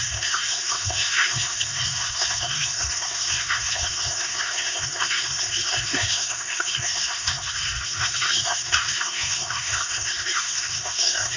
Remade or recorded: remade